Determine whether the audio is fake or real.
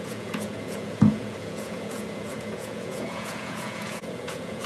fake